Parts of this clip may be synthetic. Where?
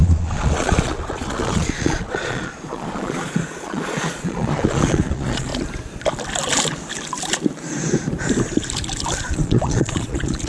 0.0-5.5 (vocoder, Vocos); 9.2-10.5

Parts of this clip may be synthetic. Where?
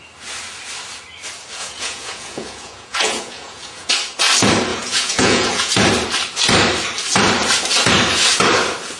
1.6-3.9 (vocoder, Vocos); 4.7-5.7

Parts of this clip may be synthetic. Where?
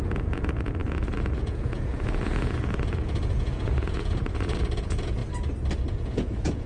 0.0-5.2 (vocoder, Vocos); 5.9-6.7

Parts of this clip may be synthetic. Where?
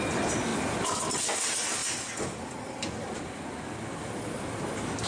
none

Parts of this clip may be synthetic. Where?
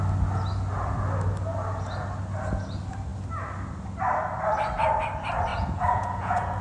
5.5-6.6 (vocoder, Vocos)